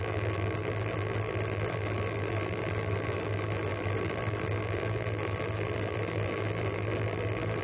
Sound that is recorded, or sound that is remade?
remade